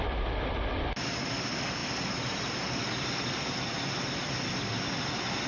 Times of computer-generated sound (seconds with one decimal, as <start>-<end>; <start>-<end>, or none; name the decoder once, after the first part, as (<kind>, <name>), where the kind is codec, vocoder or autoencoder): none